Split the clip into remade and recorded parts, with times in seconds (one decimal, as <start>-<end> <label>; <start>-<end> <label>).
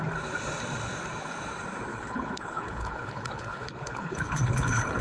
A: 0.0-1.9 recorded; 1.9-5.0 remade